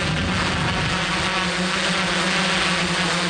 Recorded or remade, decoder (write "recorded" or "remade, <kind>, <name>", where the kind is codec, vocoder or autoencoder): recorded